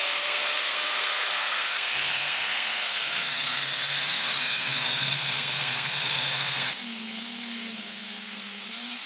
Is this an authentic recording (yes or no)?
no